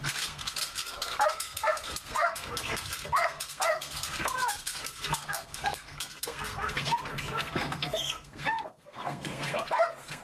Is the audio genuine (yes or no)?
no